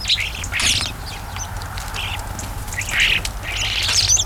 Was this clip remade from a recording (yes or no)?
no